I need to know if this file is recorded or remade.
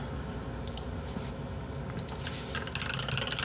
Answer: recorded